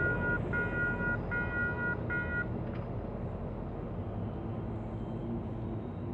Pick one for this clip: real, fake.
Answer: real